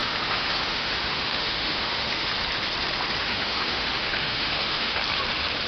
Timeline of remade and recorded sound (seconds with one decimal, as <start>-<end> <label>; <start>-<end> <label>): 0.0-2.3 remade; 2.3-3.2 recorded; 3.2-5.0 remade; 5.0-5.7 recorded